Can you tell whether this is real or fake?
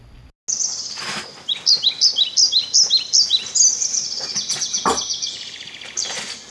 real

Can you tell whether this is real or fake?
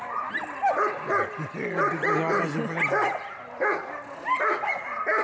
real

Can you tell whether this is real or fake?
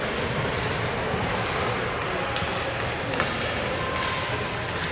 real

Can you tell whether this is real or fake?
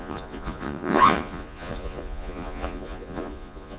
fake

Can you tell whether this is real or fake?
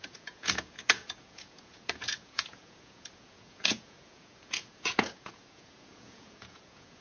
fake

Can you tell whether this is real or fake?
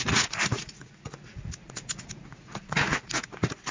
fake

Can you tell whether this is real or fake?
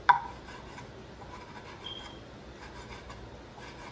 real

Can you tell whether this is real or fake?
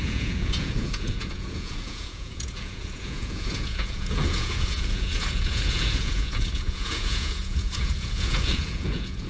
fake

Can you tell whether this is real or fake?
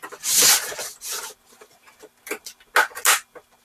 real